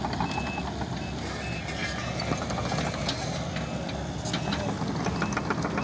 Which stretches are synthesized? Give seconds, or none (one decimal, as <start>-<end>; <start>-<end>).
none